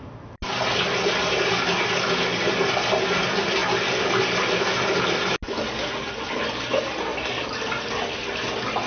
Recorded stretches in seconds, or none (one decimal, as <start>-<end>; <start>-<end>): 0.0-8.9